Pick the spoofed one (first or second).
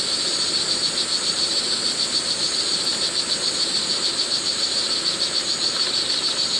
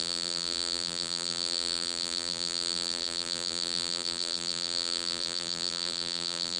second